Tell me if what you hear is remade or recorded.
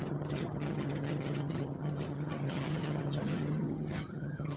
remade